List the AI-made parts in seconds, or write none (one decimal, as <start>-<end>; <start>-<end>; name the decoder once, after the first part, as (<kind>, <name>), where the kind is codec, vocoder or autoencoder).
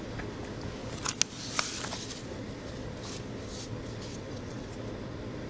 4.1-4.7 (vocoder, WaveNeXt)